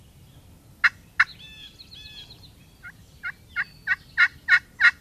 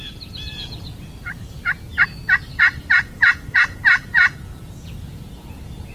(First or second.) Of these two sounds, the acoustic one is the first